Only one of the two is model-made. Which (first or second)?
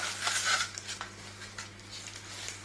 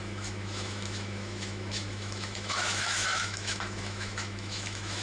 second